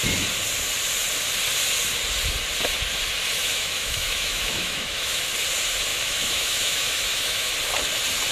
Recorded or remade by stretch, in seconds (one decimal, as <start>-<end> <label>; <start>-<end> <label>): 0.0-3.4 recorded; 3.4-5.2 remade; 5.2-5.9 recorded; 5.9-7.5 remade; 7.5-8.3 recorded